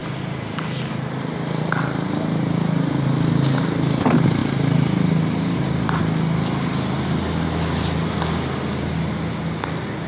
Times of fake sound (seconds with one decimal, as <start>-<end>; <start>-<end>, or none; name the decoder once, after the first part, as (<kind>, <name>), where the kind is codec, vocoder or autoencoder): 4.4-6.0 (vocoder, BigVGAN v2)